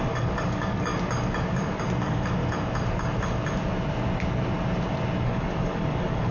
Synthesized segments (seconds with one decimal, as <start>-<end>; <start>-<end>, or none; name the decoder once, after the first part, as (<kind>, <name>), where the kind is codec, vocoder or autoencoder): 0.0-0.9 (codec, DAC); 2.0-2.4; 5.2-6.3